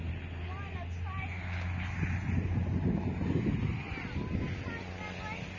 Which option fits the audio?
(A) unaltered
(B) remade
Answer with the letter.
A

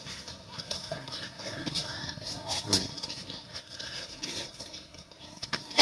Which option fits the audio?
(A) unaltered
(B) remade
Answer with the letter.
B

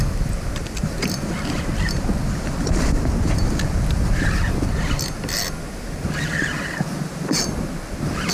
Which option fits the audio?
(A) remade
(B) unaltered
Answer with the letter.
B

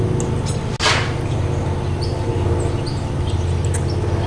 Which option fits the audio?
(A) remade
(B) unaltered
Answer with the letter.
B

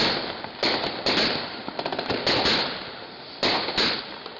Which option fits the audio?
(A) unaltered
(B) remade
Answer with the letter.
A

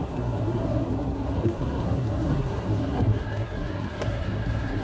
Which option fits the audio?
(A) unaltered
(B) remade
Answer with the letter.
B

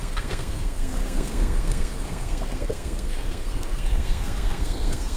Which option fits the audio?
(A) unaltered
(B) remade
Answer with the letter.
B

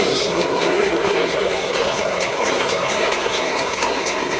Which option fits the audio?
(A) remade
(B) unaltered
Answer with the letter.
A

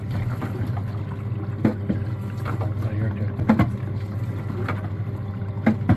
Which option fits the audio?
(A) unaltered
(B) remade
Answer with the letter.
A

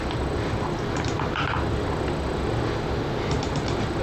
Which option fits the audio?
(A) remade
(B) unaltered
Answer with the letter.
B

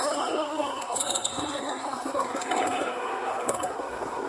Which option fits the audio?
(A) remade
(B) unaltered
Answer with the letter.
A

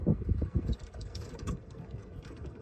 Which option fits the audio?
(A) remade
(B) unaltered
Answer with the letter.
A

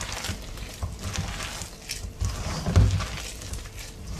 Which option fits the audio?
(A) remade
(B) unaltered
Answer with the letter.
B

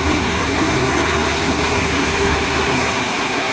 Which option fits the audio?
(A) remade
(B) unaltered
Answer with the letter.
A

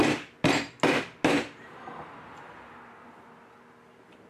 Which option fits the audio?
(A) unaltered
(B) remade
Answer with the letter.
A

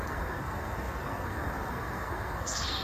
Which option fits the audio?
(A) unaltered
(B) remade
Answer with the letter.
B